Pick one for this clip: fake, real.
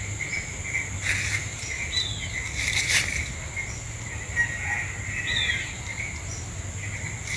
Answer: real